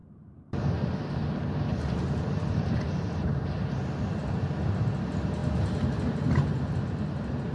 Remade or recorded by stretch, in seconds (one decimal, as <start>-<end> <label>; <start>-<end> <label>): 0.0-0.9 remade; 0.9-1.7 recorded; 1.7-3.5 remade; 3.5-7.5 recorded